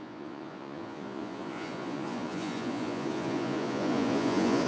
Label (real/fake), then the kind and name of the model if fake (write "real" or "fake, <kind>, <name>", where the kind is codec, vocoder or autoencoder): fake, vocoder, Vocos